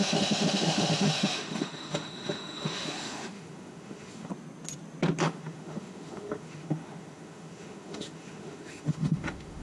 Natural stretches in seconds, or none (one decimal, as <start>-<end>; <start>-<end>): 4.3-5.2